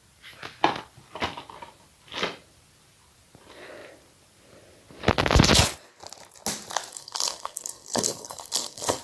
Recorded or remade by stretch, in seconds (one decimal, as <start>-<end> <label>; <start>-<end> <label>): 0.0-6.9 recorded; 6.9-9.0 remade